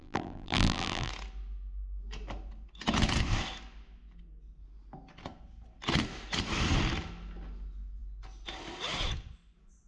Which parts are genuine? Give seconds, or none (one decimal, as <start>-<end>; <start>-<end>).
1.1-9.9